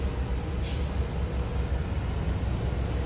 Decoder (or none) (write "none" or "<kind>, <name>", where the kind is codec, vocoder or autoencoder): none